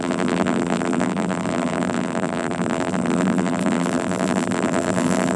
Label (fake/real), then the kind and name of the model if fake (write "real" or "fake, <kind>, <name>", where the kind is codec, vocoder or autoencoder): fake, vocoder, BigVGAN v2